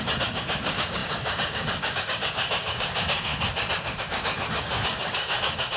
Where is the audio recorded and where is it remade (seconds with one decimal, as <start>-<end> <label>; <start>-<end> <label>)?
0.0-3.3 remade; 3.3-4.0 recorded; 4.0-5.8 remade